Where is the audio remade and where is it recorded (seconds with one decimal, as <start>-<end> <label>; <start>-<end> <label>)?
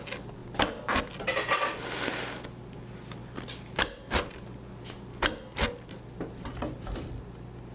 0.0-7.7 recorded